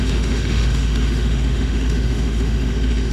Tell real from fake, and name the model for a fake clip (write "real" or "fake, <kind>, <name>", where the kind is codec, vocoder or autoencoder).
fake, autoencoder, DAC-VAE